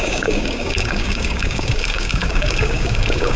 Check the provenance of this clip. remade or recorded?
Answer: remade